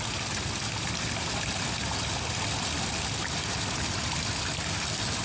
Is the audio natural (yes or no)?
yes